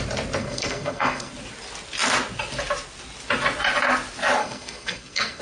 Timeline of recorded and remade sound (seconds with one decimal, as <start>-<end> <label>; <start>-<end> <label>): 0.0-0.4 recorded; 0.4-1.3 remade; 1.3-4.4 recorded; 4.4-5.4 remade